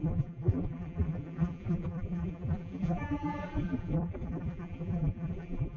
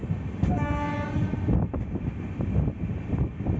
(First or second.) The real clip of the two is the second